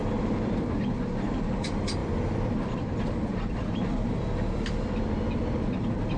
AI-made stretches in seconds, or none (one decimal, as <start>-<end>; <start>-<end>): 0.0-0.8; 2.0-5.0